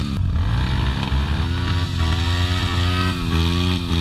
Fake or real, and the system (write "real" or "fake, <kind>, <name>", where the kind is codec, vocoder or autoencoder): real